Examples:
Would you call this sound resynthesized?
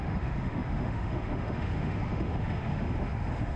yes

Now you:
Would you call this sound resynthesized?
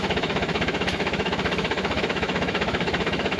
yes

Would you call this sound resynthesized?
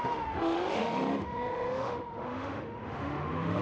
yes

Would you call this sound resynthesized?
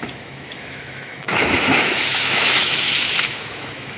yes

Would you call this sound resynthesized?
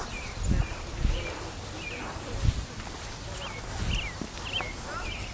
no